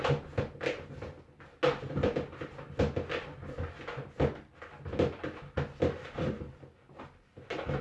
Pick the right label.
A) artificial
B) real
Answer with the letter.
B